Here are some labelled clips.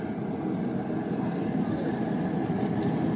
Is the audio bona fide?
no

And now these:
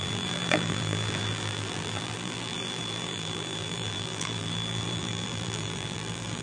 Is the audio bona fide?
no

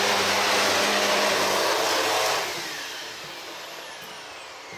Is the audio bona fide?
yes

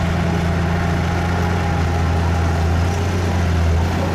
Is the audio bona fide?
yes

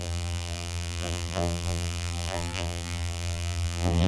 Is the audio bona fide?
no